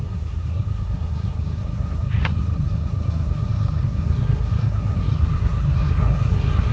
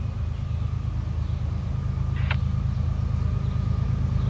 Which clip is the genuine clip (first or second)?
second